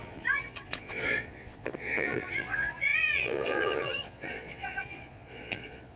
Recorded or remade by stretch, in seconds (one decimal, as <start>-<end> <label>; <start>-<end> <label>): 0.0-6.0 remade